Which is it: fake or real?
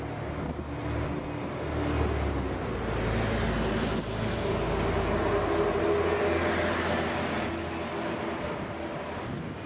real